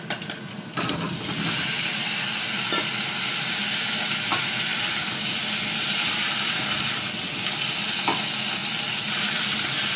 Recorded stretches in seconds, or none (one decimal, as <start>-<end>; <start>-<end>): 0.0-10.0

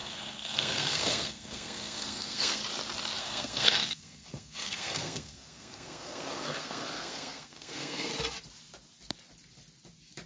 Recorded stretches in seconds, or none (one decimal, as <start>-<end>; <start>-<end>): 2.6-3.2; 8.1-10.3

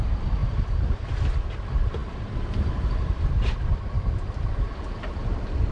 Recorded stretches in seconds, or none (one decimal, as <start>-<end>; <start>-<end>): 0.0-2.0; 4.8-5.7